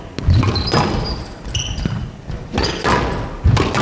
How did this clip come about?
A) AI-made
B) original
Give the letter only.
B